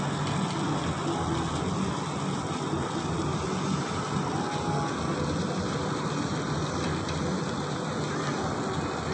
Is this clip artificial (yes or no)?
no